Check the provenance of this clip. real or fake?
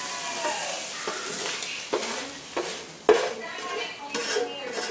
real